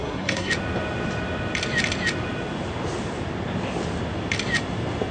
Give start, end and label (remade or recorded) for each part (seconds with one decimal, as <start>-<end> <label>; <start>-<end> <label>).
0.0-0.5 remade; 0.5-5.1 recorded